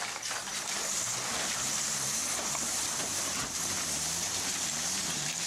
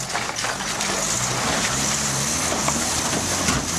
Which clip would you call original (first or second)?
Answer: second